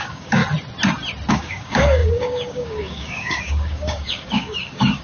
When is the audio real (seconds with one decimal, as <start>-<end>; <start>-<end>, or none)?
0.4-1.3